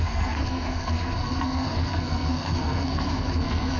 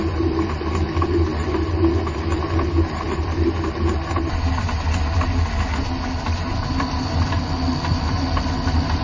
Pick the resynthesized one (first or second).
first